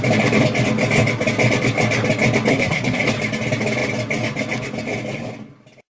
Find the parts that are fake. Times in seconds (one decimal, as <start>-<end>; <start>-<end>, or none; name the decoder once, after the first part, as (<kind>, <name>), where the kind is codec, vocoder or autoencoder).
2.5-3.0 (codec, SNAC)